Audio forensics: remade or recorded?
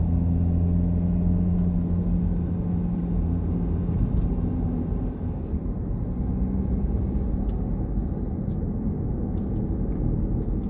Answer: recorded